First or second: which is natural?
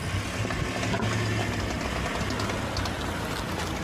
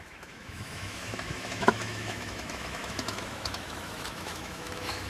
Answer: first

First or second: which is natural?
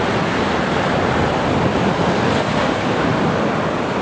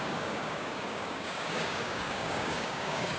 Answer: first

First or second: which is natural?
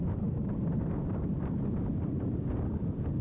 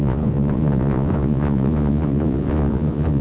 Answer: first